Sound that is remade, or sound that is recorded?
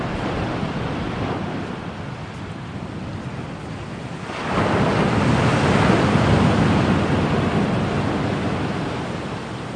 recorded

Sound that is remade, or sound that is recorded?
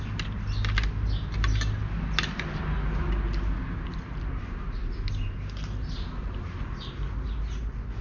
recorded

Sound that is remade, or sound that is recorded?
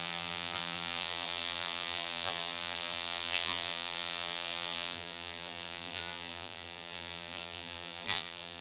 remade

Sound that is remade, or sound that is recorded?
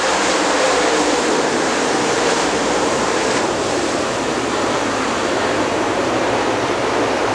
remade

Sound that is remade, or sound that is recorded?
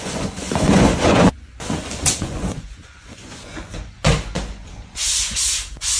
remade